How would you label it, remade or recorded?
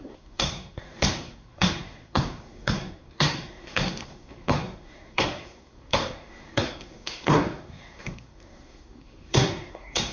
remade